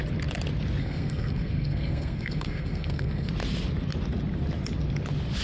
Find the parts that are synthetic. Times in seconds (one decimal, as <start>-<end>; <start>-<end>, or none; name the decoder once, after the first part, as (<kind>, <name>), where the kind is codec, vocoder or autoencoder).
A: 0.8-3.3 (codec, SNAC)

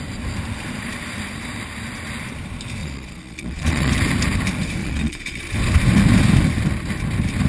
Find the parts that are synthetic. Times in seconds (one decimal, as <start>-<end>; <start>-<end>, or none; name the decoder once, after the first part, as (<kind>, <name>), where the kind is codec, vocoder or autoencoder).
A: 2.8-3.9 (vocoder, Vocos); 4.8-5.4

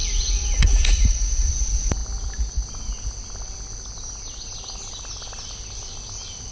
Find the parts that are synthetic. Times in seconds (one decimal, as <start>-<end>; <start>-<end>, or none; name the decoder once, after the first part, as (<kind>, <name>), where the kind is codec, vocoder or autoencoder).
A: 0.0-1.5 (vocoder, Vocos)

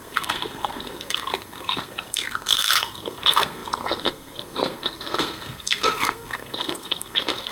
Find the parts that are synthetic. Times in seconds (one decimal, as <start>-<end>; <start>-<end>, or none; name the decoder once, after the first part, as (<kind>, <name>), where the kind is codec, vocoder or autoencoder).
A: 0.0-7.5 (codec, SNAC)